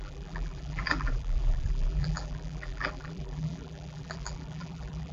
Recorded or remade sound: remade